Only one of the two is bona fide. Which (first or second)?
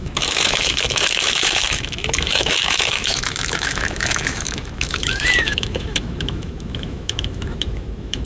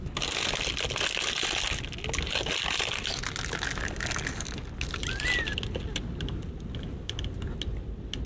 second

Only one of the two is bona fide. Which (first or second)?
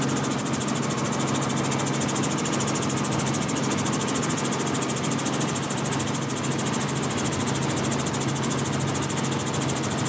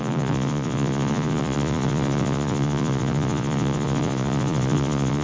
first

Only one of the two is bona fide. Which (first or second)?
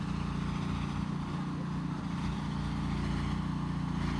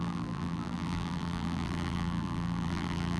first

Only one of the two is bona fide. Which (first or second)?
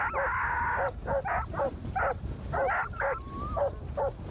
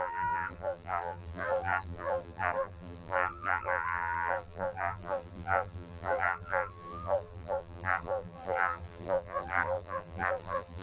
first